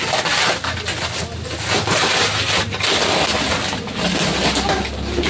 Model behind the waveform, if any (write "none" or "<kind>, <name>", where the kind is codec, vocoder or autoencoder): none